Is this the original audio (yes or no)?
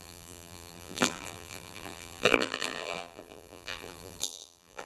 no